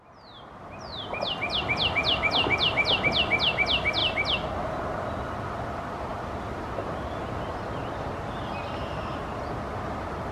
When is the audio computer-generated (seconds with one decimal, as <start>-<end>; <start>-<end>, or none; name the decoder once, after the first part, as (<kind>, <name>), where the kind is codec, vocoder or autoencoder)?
none

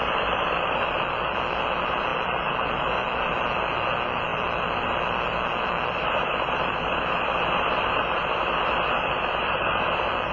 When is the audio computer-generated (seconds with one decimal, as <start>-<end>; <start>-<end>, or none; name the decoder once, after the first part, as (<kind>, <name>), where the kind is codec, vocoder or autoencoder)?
none

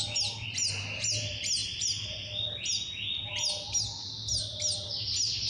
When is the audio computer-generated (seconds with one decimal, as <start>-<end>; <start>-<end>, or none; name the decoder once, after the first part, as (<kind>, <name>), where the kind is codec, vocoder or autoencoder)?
none

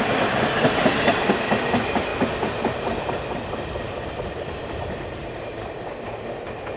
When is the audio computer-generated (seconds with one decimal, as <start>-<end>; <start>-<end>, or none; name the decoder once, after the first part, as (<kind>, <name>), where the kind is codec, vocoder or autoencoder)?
0.0-2.1 (vocoder, BigVGAN v2); 4.8-6.8

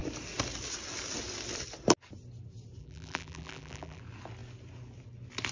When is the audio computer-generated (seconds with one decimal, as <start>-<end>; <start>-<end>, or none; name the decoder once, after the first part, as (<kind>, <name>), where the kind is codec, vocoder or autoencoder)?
2.8-4.0 (vocoder, BigVGAN v2)

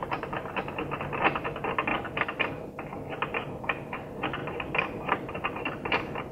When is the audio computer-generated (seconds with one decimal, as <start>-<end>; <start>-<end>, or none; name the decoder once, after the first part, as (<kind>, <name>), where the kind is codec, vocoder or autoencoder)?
4.4-6.3 (vocoder, BigVGAN v2)